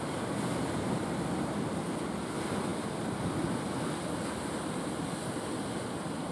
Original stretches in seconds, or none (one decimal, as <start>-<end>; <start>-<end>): 0.0-6.3